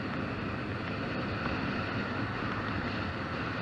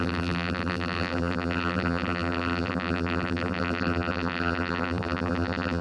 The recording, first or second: first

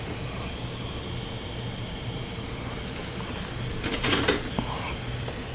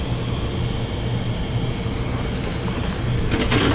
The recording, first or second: second